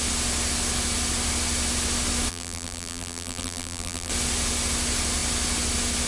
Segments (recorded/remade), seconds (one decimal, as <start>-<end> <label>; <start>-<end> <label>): 0.0-2.3 recorded; 2.3-4.1 remade; 4.1-6.1 recorded